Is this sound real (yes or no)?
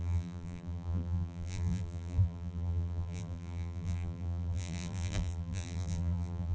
no